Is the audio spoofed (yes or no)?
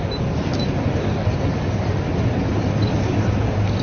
no